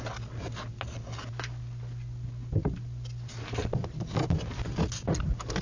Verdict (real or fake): real